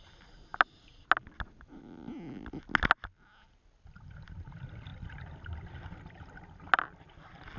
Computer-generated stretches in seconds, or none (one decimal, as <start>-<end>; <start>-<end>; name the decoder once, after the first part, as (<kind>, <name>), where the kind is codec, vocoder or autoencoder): none